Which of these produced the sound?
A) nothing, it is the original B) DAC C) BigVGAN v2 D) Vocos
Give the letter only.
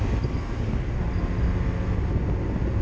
A